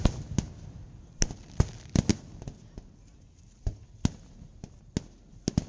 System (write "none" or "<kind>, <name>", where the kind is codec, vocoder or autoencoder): none